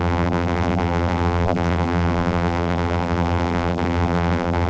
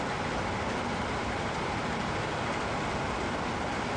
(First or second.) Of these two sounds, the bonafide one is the second